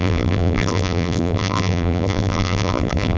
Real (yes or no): no